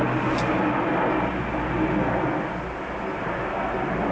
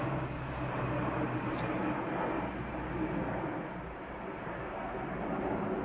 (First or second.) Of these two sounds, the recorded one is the first